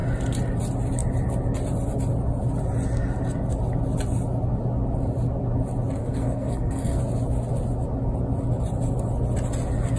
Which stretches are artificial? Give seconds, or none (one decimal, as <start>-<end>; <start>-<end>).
6.0-7.0